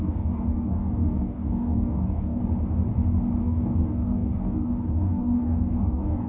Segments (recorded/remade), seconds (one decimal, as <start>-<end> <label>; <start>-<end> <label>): 0.0-2.4 remade; 2.4-3.4 recorded; 3.4-6.3 remade